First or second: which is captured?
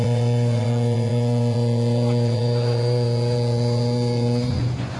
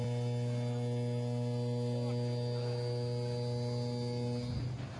second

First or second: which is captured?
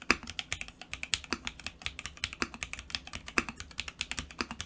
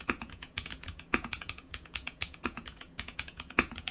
first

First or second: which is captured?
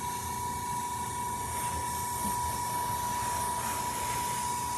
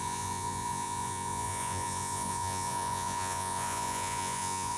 first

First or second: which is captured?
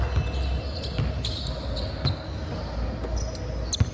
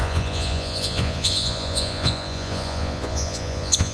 first